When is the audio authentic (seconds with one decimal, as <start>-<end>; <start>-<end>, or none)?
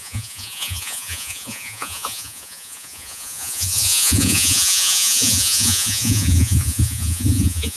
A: none